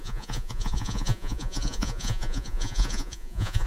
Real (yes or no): no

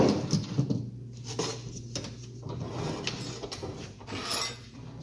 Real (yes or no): yes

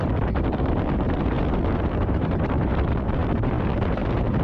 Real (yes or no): no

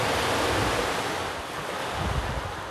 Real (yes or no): yes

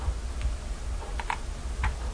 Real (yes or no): yes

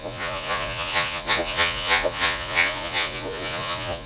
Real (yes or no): no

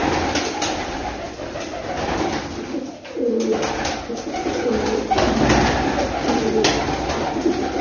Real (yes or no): yes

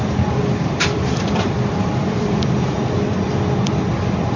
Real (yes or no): no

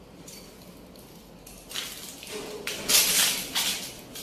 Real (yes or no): yes